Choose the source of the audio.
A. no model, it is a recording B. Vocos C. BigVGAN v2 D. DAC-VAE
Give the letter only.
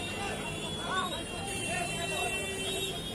C